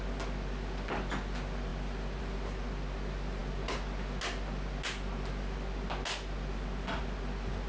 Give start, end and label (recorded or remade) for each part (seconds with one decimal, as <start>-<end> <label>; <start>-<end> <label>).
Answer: 0.0-7.7 recorded